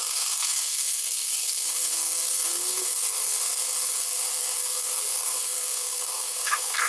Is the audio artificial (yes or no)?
yes